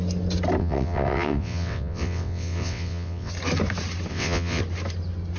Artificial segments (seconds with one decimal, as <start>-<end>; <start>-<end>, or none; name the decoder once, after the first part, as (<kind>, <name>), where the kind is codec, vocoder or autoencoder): 0.6-3.3 (vocoder, WaveNeXt); 4.1-4.6